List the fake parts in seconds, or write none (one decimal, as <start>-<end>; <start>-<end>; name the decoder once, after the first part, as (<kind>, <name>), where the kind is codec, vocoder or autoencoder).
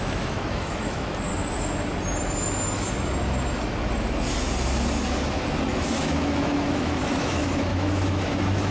0.0-1.3 (autoencoder, DAC-VAE); 5.7-8.7